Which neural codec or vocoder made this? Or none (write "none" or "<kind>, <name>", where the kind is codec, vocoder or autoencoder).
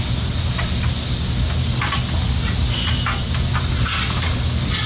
none